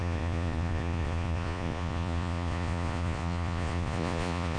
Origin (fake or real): fake